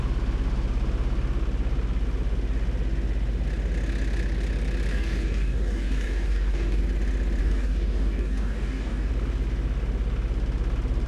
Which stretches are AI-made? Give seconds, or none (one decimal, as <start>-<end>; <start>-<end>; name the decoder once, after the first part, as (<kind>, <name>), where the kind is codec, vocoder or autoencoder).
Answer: 4.9-6.8 (codec, DAC); 7.4-9.1